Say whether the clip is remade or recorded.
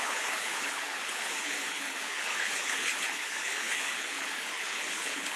remade